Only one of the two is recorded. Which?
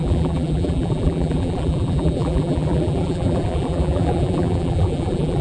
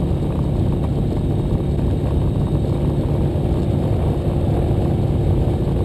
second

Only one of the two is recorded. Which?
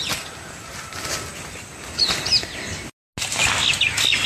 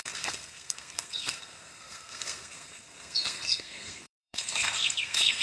first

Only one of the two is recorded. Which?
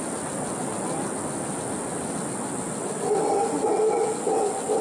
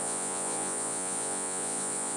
first